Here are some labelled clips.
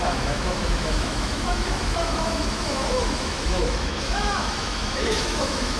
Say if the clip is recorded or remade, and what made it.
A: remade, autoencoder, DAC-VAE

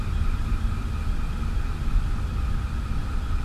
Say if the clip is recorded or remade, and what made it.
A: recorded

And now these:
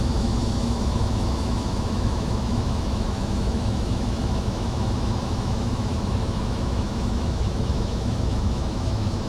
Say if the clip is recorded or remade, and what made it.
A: remade, autoencoder, DAC-VAE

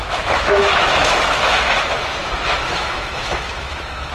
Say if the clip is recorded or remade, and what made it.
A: remade, autoencoder, DAC-VAE